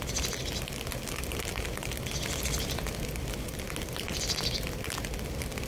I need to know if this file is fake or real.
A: real